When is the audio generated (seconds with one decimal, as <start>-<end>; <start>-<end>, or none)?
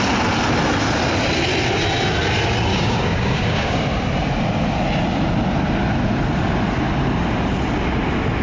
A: 2.7-3.8